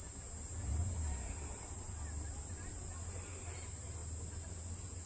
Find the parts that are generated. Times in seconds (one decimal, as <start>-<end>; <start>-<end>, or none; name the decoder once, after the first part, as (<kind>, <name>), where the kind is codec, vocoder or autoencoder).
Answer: none